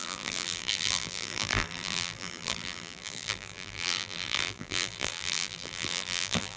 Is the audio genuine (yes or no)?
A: no